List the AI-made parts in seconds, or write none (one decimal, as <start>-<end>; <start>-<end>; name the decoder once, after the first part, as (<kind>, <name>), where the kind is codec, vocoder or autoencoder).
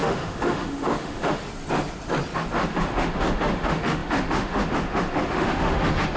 0.0-1.4 (autoencoder, DAC-VAE); 2.7-6.2